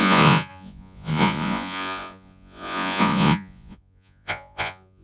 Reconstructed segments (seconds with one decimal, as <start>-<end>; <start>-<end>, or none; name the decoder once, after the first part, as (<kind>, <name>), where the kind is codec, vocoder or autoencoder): 0.0-5.0 (vocoder, Vocos)